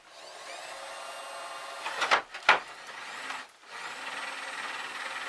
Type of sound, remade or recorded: recorded